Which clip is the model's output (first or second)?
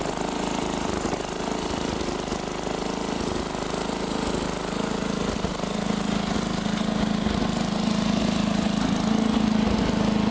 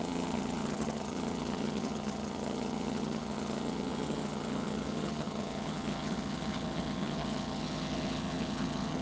second